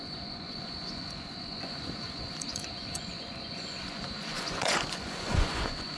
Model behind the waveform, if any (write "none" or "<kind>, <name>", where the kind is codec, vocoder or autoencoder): vocoder, Vocos